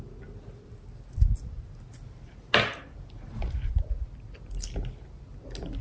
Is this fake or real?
real